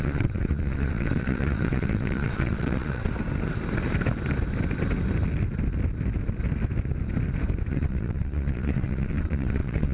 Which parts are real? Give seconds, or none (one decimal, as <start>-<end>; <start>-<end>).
3.1-7.7

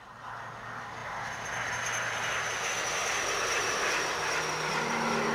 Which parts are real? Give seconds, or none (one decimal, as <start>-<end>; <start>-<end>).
0.0-5.3

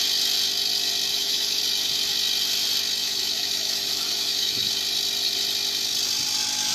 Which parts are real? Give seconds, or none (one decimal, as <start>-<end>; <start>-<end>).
0.0-1.1; 1.6-3.0; 4.7-6.7

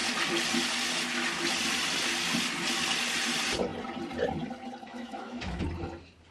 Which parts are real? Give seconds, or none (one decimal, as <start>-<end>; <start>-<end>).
0.0-4.9; 5.6-6.3

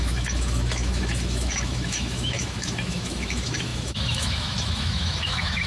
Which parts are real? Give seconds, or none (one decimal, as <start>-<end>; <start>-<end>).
none

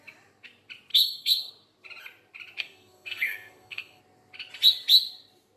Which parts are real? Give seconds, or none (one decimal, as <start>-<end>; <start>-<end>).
0.0-0.9; 1.5-2.6; 4.0-5.6

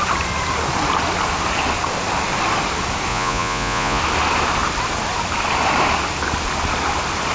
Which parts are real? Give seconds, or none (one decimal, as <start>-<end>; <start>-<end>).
0.0-3.1; 4.0-7.3

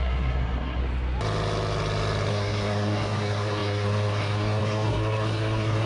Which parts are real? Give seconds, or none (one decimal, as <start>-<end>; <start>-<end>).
0.8-2.3